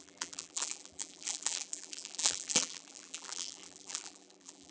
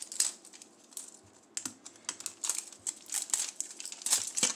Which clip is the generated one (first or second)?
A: first